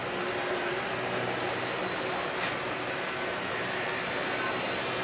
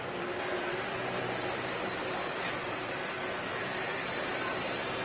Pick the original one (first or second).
first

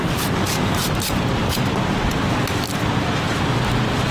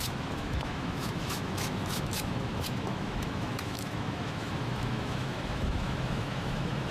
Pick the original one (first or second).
first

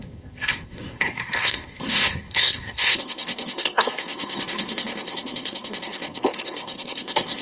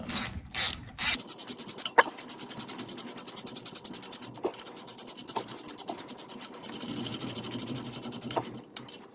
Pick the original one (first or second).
second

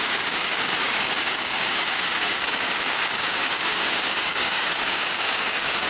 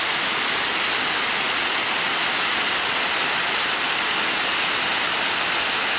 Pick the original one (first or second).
second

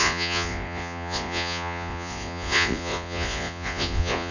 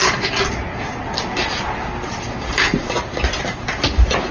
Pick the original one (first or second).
second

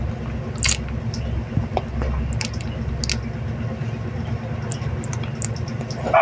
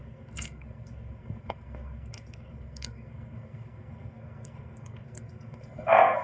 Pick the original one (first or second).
first